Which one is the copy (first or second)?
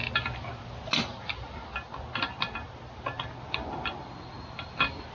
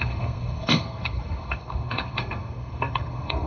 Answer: second